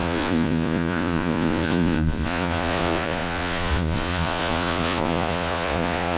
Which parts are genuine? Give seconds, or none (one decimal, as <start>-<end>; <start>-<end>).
none